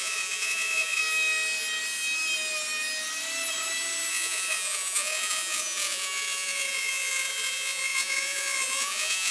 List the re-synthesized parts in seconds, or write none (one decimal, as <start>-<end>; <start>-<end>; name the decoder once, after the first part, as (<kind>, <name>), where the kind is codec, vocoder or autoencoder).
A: 0.0-1.0 (vocoder, Vocos); 4.1-9.3